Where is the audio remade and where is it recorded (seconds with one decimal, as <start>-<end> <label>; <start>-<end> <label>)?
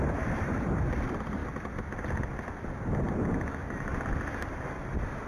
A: 0.0-1.4 remade; 1.4-4.5 recorded; 4.5-5.3 remade